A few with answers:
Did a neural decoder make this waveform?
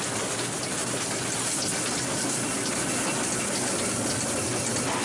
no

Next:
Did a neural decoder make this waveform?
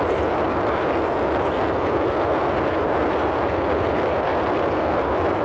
yes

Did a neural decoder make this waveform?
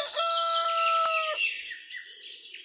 no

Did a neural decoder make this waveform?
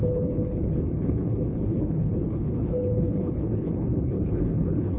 yes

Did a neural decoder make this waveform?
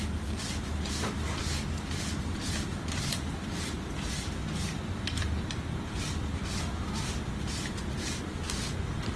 no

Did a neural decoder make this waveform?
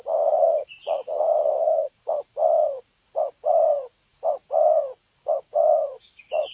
yes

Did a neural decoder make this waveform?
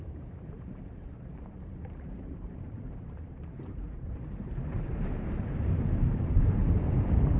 yes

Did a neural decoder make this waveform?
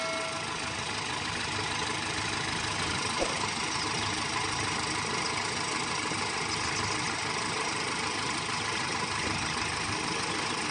no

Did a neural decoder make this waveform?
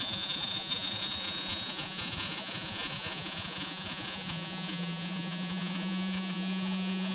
yes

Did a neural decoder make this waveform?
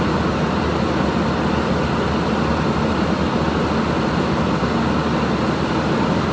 no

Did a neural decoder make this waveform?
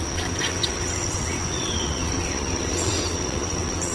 yes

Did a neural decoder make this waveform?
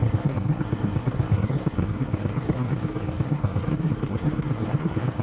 yes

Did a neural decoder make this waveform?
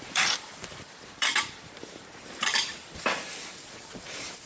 yes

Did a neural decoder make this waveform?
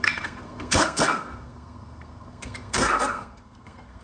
yes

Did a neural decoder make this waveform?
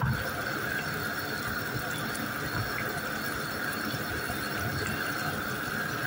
no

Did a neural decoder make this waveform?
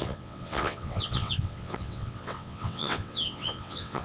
yes